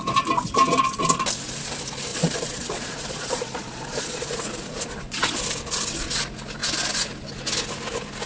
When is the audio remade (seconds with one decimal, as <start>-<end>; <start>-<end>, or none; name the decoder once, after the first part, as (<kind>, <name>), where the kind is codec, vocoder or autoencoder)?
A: 2.1-5.4 (vocoder, Vocos)

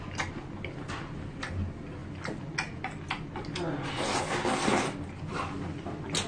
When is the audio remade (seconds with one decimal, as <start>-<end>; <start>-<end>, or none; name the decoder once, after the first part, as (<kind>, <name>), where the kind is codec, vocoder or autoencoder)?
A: none

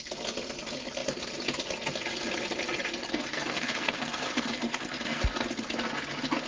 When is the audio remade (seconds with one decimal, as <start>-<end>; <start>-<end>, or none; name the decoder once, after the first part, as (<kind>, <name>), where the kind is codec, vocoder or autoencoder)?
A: 3.0-5.2 (codec, SNAC)

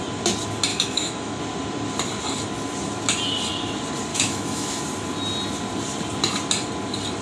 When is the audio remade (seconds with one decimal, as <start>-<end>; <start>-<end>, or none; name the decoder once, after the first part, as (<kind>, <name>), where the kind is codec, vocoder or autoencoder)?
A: 0.7-1.4 (autoencoder, DAC-VAE); 4.1-4.8

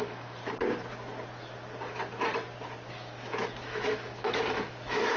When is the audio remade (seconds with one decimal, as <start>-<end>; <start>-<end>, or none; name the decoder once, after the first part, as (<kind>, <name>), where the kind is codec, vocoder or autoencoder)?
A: 0.0-0.4 (autoencoder, DAC-VAE); 2.9-5.2

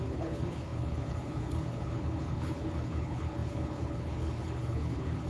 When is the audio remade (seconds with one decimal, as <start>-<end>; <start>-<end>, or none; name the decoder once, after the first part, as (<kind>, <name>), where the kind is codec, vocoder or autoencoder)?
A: 0.0-5.3 (codec, HILCodec)

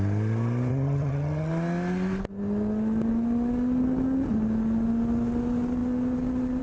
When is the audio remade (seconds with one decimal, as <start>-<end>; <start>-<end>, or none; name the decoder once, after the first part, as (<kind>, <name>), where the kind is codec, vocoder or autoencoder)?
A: 0.7-1.5 (vocoder, HiFi-GAN)

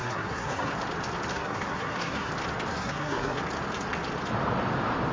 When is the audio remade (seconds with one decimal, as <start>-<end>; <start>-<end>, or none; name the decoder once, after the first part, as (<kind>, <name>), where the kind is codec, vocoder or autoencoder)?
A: 0.0-0.7 (codec, SNAC); 1.3-2.3; 2.7-3.4